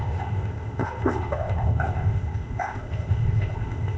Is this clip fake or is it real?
fake